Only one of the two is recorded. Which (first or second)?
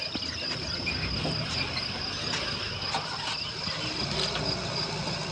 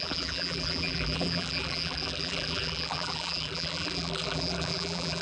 first